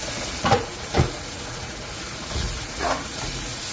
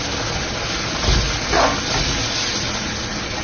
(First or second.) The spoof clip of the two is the first